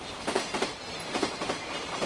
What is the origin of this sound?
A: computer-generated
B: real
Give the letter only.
B